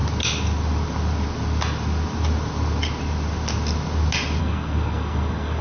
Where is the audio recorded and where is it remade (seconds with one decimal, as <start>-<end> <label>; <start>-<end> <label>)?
0.0-4.4 recorded; 4.4-5.6 remade

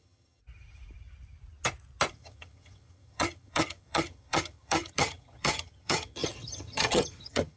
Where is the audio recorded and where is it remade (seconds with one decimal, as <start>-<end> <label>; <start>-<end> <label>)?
0.0-0.4 remade; 0.4-2.1 recorded; 2.1-7.6 remade